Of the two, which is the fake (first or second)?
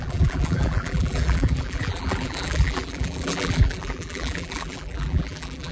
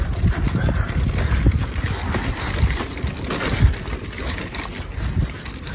first